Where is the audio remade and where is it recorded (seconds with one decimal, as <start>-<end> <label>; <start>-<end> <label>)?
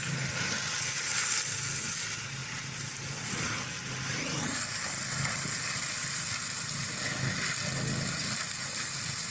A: 0.0-9.3 recorded